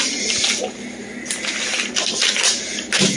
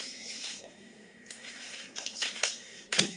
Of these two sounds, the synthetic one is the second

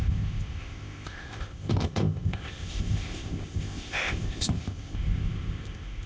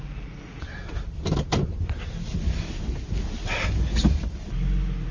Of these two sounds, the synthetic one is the first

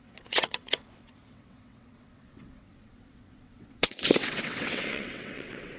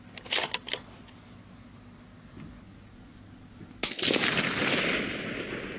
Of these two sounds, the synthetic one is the first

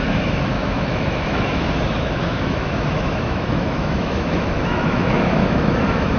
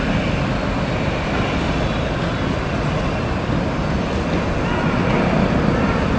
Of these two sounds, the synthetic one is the first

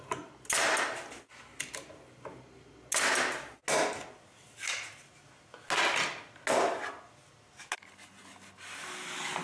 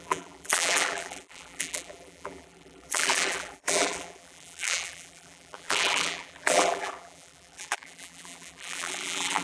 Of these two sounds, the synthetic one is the second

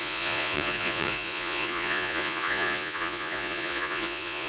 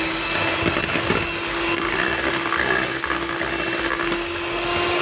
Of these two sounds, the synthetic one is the first